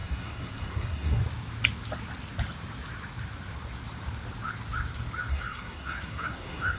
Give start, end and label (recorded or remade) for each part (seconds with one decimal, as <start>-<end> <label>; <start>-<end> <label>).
0.0-1.2 remade; 1.2-5.3 recorded; 5.3-6.8 remade